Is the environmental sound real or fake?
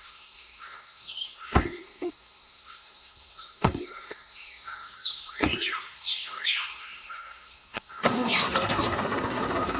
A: fake